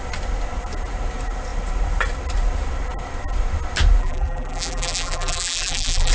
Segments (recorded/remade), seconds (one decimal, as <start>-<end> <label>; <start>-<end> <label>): 0.0-4.0 recorded; 4.0-6.1 remade